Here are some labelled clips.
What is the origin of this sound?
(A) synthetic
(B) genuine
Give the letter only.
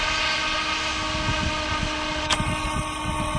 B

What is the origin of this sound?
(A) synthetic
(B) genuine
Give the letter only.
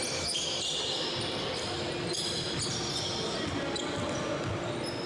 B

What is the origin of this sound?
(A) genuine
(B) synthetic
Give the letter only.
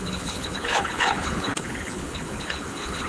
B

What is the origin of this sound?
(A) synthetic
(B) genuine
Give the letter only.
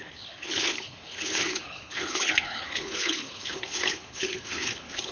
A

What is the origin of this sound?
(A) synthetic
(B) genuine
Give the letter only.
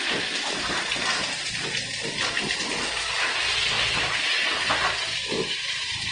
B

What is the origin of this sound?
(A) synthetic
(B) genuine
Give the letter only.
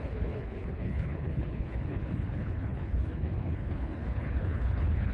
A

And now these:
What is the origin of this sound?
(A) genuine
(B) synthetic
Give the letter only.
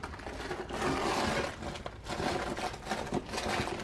A